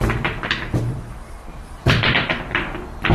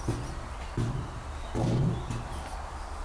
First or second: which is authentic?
second